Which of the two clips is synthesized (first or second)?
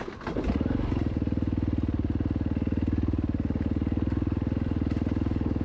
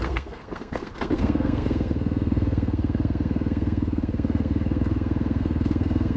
second